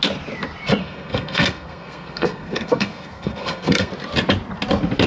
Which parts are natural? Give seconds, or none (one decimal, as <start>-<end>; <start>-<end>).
0.0-0.8; 3.9-5.1